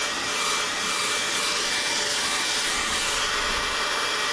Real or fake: real